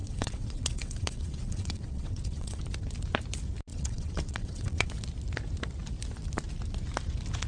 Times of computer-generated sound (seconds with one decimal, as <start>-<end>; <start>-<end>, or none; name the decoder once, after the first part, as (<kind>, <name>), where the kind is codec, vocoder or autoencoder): 0.0-2.6 (vocoder, WaveNeXt); 3.7-4.9

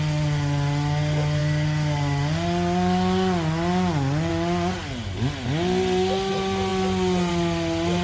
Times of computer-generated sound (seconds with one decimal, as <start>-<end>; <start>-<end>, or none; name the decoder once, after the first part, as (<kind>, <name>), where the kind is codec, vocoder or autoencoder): none

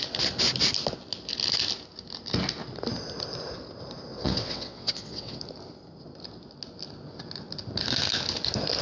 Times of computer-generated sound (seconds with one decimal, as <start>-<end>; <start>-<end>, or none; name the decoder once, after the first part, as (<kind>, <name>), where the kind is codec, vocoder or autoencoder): 4.1-5.4 (vocoder, WaveNeXt)

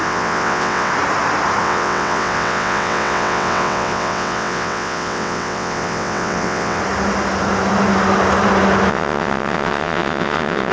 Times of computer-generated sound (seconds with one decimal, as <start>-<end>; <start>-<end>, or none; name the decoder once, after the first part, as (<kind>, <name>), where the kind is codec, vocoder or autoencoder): 0.0-0.9 (vocoder, WaveNeXt); 1.6-6.8; 8.9-10.7

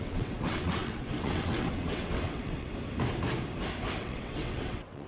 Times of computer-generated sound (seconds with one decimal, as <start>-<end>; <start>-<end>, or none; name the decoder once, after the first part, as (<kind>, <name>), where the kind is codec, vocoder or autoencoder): 0.0-2.7 (vocoder, WaveNeXt); 4.0-5.1